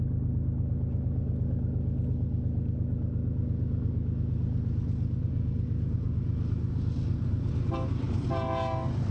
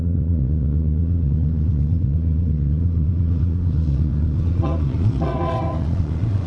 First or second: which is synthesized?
second